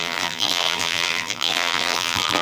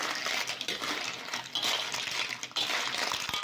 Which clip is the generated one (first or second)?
first